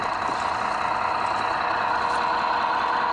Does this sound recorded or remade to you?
recorded